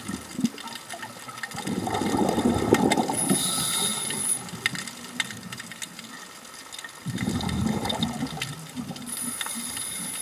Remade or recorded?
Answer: recorded